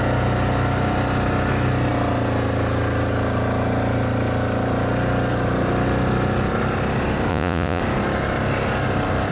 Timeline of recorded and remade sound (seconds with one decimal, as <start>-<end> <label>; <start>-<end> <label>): 0.0-7.3 recorded; 7.3-7.8 remade; 7.8-9.3 recorded